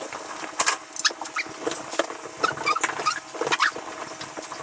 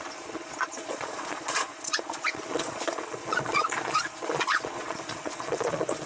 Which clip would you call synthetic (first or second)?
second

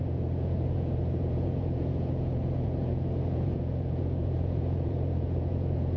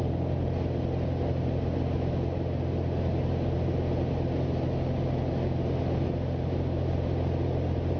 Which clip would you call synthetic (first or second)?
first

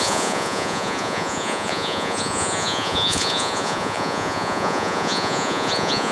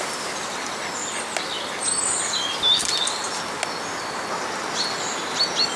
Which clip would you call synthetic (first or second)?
first